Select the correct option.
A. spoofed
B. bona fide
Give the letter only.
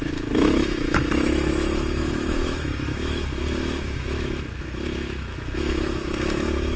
A